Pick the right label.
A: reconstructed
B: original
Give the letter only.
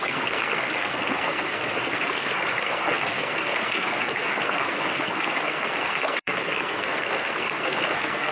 A